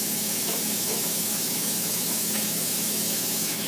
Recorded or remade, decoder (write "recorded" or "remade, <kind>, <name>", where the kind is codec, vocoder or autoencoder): remade, autoencoder, DAC-VAE